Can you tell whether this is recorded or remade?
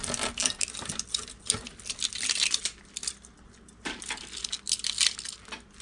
recorded